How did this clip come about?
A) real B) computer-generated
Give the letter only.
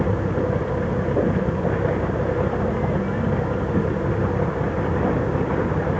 A